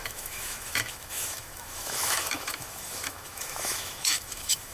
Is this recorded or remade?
remade